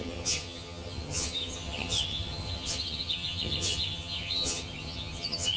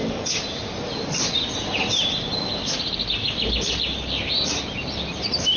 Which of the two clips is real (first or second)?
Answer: second